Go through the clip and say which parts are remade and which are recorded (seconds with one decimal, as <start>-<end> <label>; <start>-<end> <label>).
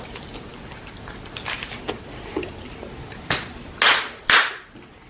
0.0-5.1 recorded